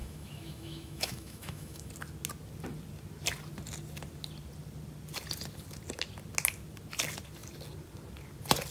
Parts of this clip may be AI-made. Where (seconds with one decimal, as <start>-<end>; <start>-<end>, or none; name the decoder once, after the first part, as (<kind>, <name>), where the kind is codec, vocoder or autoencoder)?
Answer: 0.0-1.9 (autoencoder, DAC-VAE)